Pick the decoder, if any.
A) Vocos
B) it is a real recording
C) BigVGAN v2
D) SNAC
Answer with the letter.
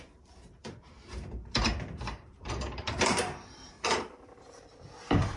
C